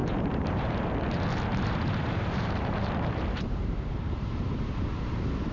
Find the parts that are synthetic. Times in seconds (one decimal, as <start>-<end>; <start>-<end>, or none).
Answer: 0.0-0.9; 1.5-4.7